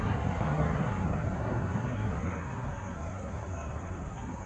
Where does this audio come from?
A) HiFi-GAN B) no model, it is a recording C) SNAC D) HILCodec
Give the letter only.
C